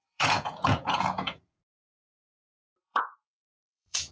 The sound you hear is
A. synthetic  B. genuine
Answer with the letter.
A